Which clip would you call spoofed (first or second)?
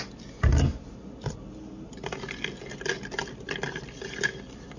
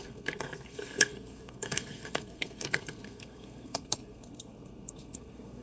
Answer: second